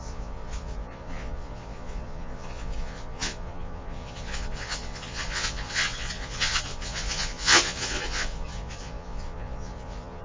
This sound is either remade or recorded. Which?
remade